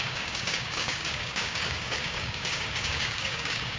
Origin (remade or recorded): remade